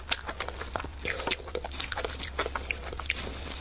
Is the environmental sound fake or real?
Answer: real